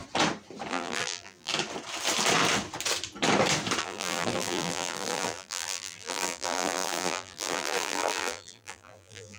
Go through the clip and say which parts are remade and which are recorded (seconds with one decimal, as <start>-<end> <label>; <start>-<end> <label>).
0.0-0.7 recorded; 0.7-1.5 remade; 1.5-3.8 recorded; 3.8-9.4 remade